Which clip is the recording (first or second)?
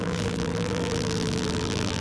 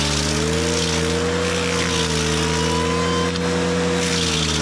second